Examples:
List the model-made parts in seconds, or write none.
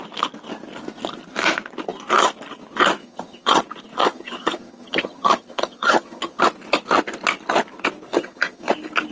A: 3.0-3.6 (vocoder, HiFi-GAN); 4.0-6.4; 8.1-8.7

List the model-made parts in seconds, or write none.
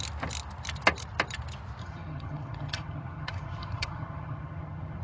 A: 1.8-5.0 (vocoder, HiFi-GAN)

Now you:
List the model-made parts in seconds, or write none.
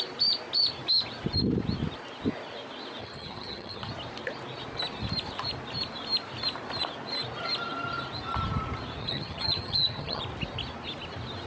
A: 3.0-3.9 (vocoder, HiFi-GAN); 9.0-10.2